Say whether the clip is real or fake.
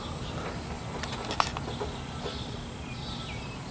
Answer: real